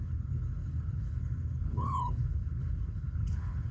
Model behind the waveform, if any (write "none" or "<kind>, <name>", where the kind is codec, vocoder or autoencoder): codec, HILCodec